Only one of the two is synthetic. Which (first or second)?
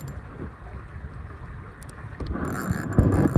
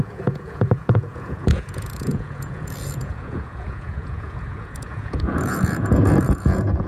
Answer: second